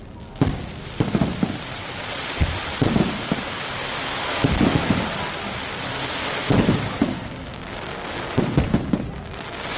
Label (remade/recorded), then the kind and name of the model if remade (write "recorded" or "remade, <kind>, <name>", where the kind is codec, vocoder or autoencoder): recorded